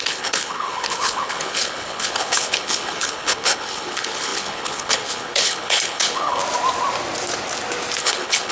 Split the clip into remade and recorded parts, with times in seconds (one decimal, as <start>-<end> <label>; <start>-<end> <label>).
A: 0.0-6.4 remade; 6.4-8.0 recorded; 8.0-8.5 remade